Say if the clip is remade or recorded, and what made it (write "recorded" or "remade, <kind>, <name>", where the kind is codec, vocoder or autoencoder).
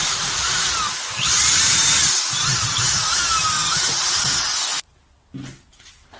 recorded